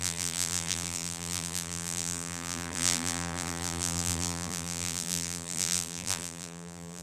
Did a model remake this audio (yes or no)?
yes